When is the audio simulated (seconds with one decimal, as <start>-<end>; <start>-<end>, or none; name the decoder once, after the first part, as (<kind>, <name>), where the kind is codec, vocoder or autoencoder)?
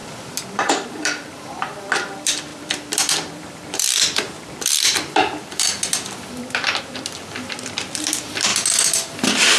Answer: 0.7-8.5 (vocoder, BigVGAN v2)